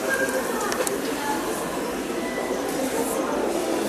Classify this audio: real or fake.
real